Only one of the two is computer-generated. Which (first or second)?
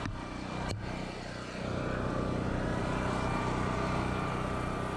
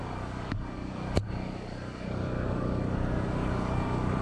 second